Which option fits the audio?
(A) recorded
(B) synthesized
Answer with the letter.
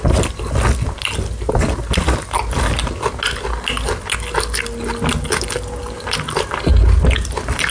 A